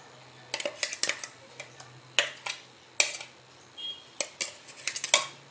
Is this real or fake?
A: real